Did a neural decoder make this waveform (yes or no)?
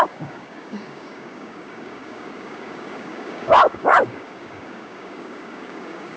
yes